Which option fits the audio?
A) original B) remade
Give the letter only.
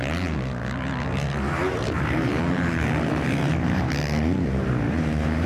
B